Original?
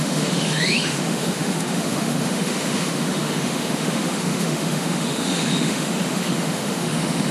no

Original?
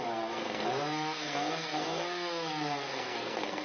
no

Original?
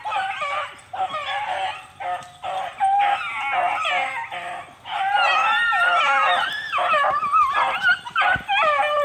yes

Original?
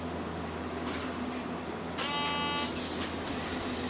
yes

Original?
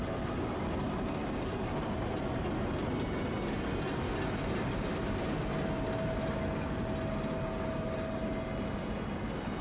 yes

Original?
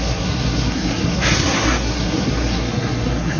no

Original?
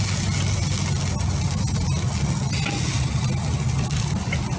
yes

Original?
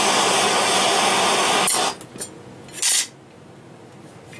yes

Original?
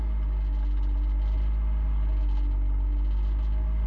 yes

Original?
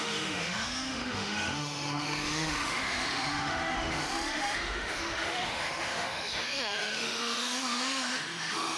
no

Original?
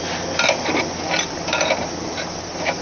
yes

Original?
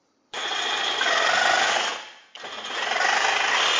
yes